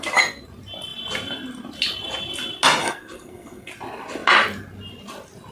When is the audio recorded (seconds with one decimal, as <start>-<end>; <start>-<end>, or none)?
0.0-2.8; 3.7-5.5